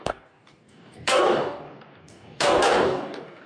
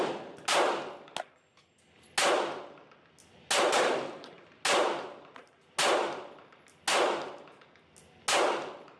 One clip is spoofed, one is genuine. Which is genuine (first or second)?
second